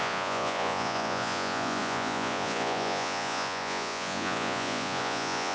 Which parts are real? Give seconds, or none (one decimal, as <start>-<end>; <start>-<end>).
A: none